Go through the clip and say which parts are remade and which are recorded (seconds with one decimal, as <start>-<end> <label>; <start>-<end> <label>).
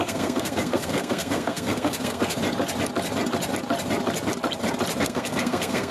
0.0-2.4 remade; 2.4-5.0 recorded; 5.0-5.9 remade